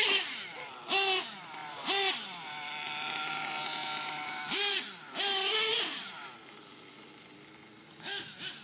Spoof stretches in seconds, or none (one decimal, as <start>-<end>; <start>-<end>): 5.7-7.5

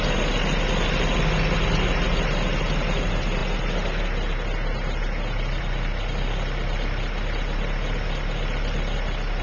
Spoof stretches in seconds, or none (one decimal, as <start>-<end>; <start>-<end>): none

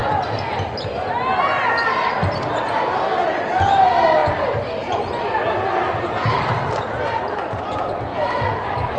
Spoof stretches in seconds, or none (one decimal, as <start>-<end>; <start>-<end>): 4.2-5.1; 8.1-9.0